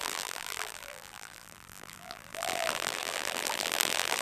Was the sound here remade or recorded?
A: remade